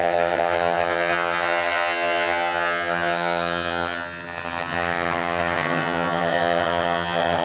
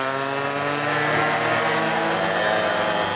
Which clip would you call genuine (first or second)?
second